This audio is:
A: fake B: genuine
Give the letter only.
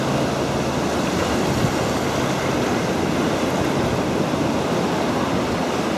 B